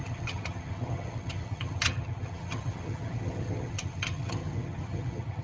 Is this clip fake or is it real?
fake